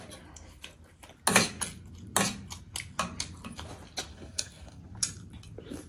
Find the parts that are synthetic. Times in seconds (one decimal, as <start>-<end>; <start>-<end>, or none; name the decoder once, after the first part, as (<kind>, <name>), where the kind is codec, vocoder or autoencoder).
4.1-4.8 (codec, SNAC)